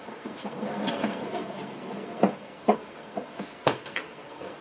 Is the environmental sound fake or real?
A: fake